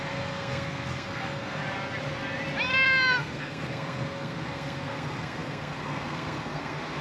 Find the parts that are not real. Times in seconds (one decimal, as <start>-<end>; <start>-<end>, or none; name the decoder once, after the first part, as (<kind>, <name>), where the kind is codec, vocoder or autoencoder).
0.0-1.6 (codec, SNAC); 3.2-7.0